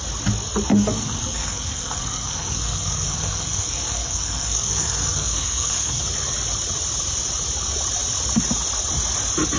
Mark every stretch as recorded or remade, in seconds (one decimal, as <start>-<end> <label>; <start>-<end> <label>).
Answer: 0.0-0.7 recorded; 0.7-6.0 remade; 6.0-9.6 recorded